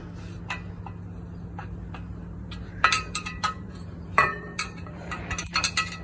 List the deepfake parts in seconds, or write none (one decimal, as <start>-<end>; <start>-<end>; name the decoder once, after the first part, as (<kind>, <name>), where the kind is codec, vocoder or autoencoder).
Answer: 1.6-5.2 (vocoder, BigVGAN v2)

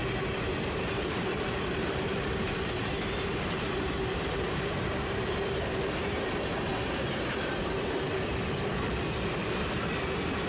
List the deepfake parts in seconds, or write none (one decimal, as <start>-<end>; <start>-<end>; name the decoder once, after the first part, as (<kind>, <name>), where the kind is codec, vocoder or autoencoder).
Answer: 0.5-8.7 (vocoder, BigVGAN v2)